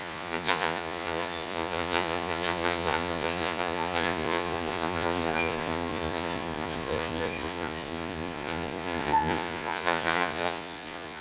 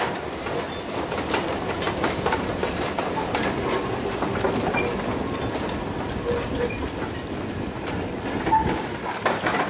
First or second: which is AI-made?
first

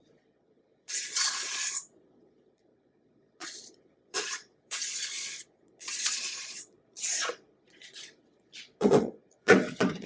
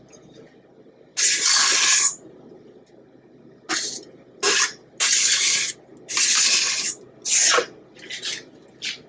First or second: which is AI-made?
first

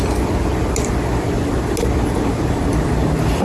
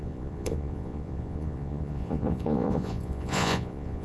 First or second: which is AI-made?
second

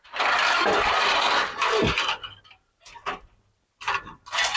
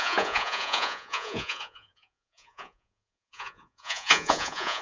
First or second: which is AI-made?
second